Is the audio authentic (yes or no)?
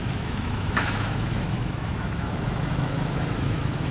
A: no